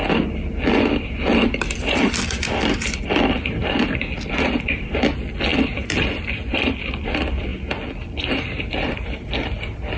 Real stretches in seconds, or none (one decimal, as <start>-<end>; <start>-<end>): 0.0-1.6; 7.5-8.7